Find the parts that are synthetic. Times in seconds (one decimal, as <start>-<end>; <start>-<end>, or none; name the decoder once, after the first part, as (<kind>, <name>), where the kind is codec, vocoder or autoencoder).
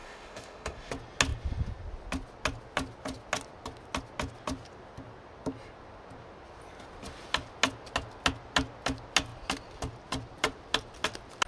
0.0-0.9 (autoencoder, DAC-VAE)